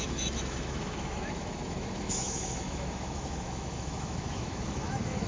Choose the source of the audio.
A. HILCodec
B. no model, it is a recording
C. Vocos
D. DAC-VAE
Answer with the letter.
D